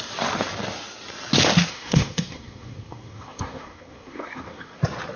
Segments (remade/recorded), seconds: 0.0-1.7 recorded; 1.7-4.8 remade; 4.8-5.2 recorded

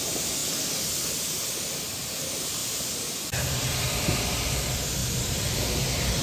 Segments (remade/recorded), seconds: 0.0-0.4 remade; 0.4-1.7 recorded; 1.7-2.6 remade; 2.6-4.5 recorded; 4.5-6.2 remade